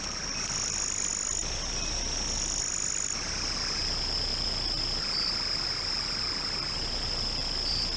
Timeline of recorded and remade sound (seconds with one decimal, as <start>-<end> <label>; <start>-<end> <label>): 0.0-8.0 recorded